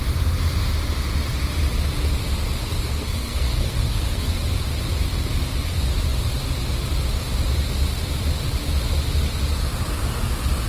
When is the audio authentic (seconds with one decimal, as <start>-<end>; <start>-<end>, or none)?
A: 0.0-2.7; 4.3-10.7